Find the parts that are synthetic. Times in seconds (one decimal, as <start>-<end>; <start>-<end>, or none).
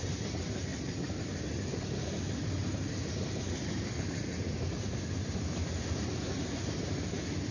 0.0-0.7; 2.4-7.5